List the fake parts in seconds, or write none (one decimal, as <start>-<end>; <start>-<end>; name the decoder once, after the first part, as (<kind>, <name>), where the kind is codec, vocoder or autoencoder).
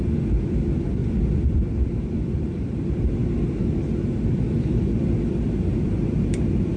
1.0-2.8 (vocoder, BigVGAN v2)